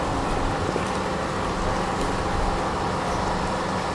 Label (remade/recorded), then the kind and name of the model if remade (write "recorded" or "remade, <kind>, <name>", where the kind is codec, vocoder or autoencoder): recorded